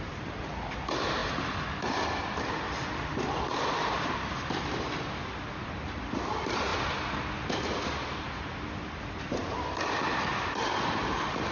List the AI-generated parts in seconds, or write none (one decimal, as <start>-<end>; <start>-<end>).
none